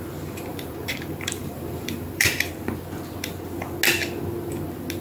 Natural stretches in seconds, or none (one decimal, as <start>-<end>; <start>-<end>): 0.0-0.5; 2.5-5.0